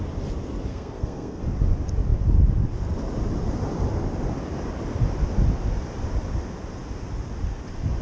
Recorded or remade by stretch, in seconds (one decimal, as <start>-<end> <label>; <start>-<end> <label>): 0.0-0.7 recorded; 0.7-1.4 remade; 1.4-8.0 recorded